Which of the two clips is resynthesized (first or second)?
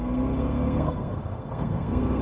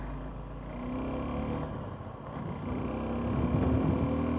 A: first